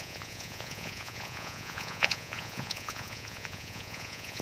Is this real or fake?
fake